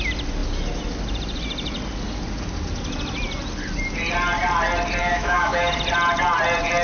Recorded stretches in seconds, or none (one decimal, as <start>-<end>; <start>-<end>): 0.0-5.0; 5.7-6.8